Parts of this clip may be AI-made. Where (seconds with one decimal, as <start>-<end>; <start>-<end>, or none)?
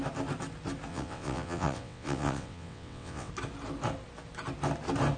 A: 0.9-3.3